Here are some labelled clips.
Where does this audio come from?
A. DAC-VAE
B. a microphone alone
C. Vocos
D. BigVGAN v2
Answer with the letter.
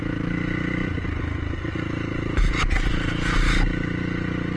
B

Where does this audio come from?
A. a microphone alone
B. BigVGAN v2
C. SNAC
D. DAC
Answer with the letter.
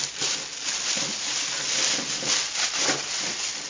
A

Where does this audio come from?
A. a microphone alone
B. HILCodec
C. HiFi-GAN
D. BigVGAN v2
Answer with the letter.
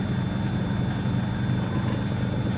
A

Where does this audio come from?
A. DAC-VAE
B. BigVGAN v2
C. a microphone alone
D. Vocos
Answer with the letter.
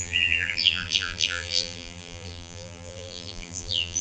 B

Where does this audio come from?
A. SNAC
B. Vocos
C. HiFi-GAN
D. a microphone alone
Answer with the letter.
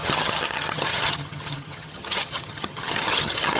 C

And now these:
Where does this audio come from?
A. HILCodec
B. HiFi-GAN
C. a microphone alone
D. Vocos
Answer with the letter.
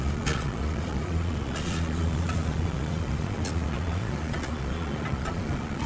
D